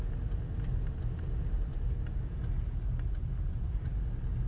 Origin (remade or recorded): recorded